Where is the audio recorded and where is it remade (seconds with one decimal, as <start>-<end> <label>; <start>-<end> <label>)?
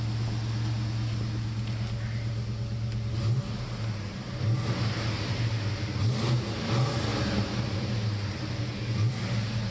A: 0.0-9.7 recorded